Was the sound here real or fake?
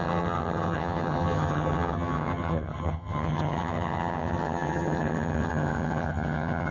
fake